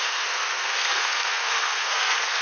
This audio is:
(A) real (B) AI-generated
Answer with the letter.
B